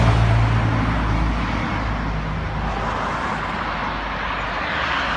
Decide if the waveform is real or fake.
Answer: real